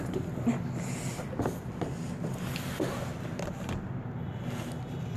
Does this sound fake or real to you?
real